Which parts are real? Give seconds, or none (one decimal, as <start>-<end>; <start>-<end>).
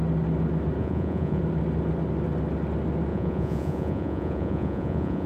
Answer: 0.0-0.8; 1.4-3.1